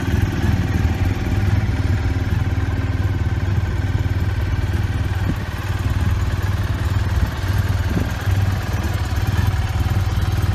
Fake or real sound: real